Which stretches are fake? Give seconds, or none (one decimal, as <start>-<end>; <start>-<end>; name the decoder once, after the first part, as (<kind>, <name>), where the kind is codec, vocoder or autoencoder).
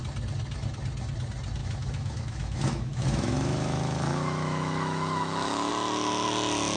1.6-5.7 (autoencoder, DAC-VAE)